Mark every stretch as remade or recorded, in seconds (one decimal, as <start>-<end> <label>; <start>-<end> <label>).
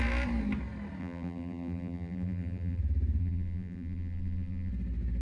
0.0-1.0 recorded; 1.0-2.8 remade; 2.8-3.2 recorded; 3.2-4.7 remade; 4.7-5.2 recorded